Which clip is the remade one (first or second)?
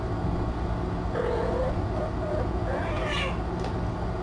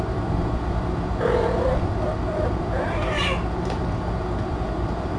second